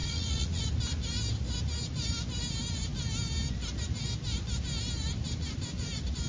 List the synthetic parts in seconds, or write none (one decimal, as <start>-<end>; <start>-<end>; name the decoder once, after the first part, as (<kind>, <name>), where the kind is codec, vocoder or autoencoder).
0.0-0.6 (vocoder, Vocos)